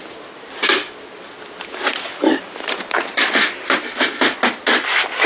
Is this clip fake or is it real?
real